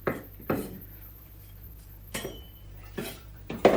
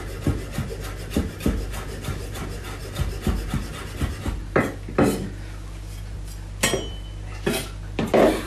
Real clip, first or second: second